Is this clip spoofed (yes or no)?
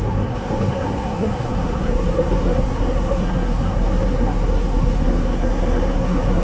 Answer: yes